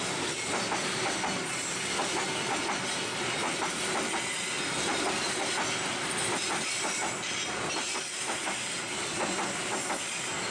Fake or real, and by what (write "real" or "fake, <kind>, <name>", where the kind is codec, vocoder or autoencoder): real